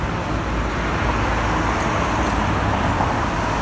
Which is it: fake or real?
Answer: real